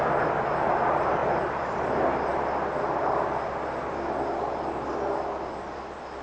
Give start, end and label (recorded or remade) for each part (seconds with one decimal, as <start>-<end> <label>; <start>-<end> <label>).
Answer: 0.0-6.2 recorded